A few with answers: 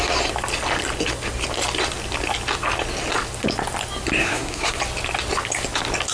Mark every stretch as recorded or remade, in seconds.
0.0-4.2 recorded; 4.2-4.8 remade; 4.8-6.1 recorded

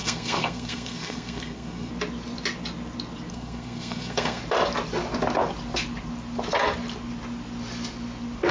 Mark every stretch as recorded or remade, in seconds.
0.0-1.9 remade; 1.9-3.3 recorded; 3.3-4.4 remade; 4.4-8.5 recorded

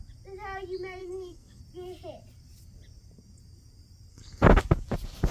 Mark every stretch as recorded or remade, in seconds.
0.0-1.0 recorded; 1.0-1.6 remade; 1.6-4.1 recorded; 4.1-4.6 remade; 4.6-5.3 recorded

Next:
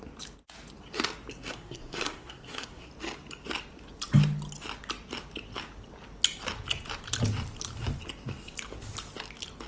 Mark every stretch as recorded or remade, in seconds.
0.0-1.3 recorded; 1.3-2.9 remade; 2.9-9.7 recorded

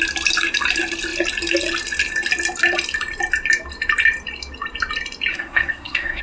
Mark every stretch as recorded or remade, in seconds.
0.0-5.3 recorded; 5.3-6.2 remade

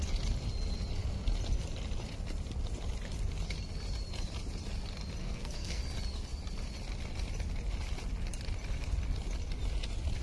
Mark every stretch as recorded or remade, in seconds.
0.0-5.2 recorded; 5.2-5.8 remade; 5.8-10.2 recorded